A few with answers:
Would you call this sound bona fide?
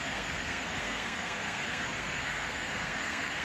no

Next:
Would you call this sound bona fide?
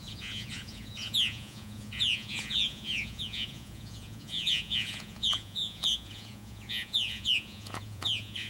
no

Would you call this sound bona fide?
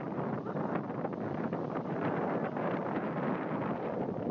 yes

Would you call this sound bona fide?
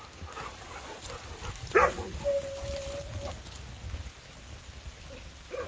yes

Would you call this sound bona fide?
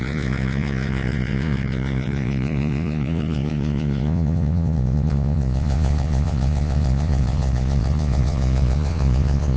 no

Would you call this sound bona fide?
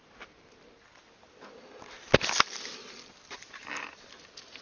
yes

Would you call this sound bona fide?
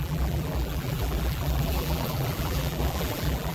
no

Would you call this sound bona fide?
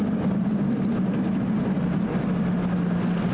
yes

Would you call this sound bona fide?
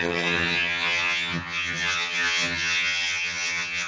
no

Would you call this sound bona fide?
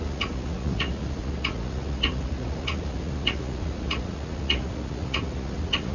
no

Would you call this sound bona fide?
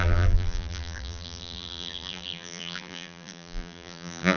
no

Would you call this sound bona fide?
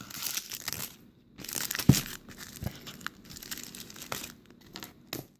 yes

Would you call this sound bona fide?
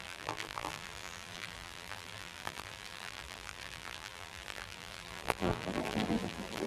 no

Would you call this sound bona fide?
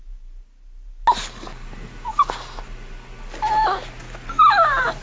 yes